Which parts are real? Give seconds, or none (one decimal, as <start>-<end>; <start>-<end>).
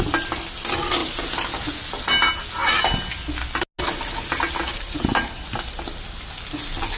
0.0-1.0; 1.6-4.7; 5.5-7.0